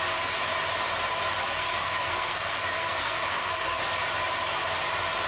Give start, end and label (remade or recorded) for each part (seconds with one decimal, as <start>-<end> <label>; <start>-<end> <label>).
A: 0.0-1.4 recorded; 1.4-3.8 remade; 3.8-5.3 recorded

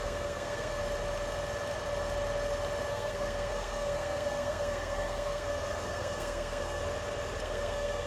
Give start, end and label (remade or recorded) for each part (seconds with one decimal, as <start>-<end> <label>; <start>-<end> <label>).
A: 0.0-0.8 remade; 0.8-2.9 recorded; 2.9-6.8 remade; 6.8-7.4 recorded; 7.4-8.1 remade

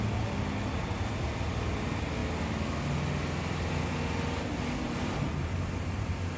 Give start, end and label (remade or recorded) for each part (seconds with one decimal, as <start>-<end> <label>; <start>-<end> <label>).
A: 0.0-6.4 recorded

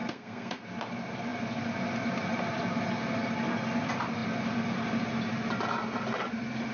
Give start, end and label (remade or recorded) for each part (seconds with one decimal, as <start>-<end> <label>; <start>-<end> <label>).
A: 0.0-0.6 remade; 0.6-6.7 recorded

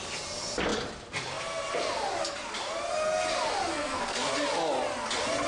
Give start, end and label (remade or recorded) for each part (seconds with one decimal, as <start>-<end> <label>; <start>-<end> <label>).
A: 0.0-3.7 recorded; 3.7-4.3 remade; 4.3-5.5 recorded

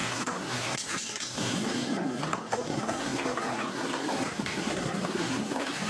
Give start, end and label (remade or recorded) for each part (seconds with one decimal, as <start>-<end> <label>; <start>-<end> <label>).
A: 0.0-5.9 remade

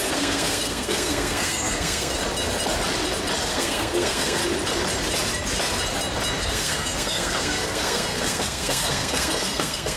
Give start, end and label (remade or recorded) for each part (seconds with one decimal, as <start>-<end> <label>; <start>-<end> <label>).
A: 0.0-2.2 remade; 2.2-3.5 recorded; 3.5-4.4 remade; 4.4-6.4 recorded; 6.4-10.0 remade